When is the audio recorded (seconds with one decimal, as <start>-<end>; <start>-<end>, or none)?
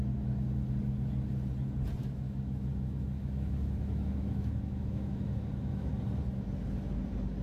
0.0-2.0; 5.9-7.4